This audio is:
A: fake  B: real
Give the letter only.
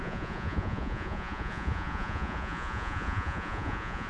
A